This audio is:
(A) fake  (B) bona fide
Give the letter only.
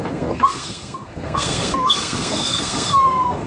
A